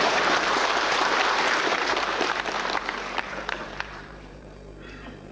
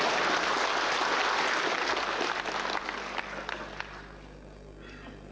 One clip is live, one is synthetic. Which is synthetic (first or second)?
first